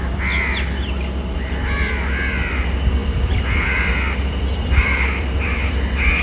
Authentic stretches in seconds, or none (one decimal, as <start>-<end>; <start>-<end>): 0.0-3.0; 5.8-6.2